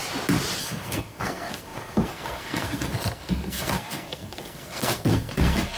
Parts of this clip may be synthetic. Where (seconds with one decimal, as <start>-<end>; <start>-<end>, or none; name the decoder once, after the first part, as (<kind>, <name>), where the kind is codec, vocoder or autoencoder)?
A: 0.6-5.8 (codec, SNAC)